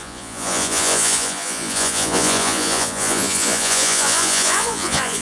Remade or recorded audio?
remade